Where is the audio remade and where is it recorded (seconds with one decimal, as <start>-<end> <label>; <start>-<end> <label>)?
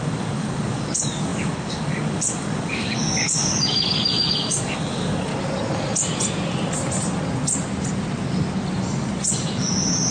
0.0-5.3 remade; 5.3-10.1 recorded